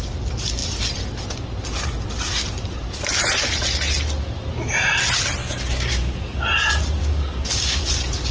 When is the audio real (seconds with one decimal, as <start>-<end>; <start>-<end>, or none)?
0.0-5.4; 6.4-7.0; 7.8-8.3